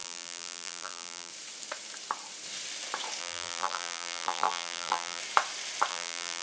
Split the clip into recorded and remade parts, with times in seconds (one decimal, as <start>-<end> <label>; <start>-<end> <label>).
0.0-1.3 remade; 1.3-3.2 recorded; 3.2-5.2 remade; 5.2-5.9 recorded; 5.9-6.4 remade